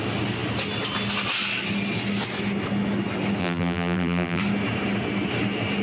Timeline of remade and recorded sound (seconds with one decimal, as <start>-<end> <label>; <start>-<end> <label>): 0.0-3.4 recorded; 3.4-4.4 remade; 4.4-5.8 recorded